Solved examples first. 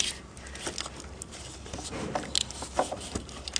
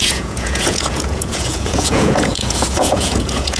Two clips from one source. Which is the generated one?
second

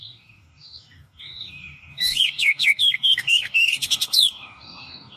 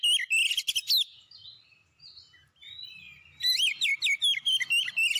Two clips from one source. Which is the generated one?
first